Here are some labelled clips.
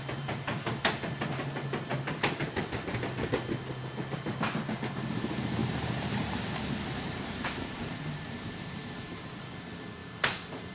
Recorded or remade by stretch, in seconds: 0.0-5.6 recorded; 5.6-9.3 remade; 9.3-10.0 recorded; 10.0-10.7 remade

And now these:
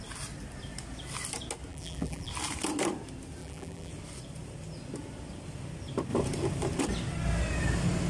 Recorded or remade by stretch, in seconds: 0.0-1.7 recorded; 1.7-2.3 remade; 2.3-3.4 recorded; 3.4-3.9 remade; 3.9-8.1 recorded